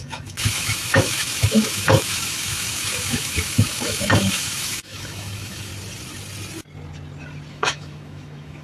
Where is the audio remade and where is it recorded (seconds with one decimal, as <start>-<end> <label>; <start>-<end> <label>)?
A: 0.0-5.7 remade; 5.7-7.5 recorded; 7.5-8.6 remade